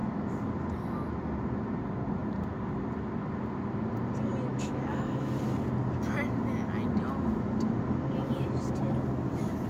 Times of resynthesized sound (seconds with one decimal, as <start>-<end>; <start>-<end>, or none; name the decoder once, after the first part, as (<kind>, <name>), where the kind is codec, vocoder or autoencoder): 4.5-5.3 (autoencoder, DAC-VAE)